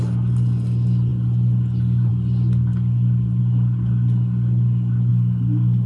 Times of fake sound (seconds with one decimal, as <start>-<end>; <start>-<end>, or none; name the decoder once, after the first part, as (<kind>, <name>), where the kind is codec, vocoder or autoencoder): none